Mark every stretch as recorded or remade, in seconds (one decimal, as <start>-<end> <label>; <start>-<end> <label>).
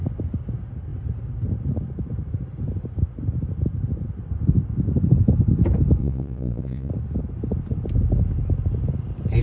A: 0.0-6.0 recorded; 6.0-6.9 remade; 6.9-9.4 recorded